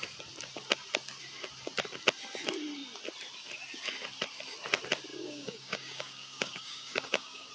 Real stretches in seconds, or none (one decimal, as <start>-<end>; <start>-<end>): 0.0-5.1